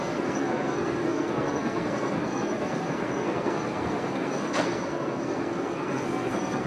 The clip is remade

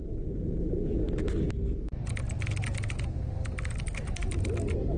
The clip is recorded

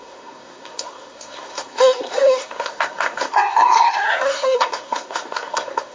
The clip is remade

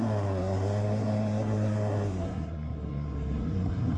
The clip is remade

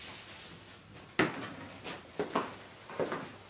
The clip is recorded